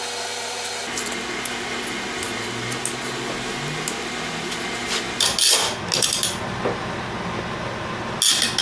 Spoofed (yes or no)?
no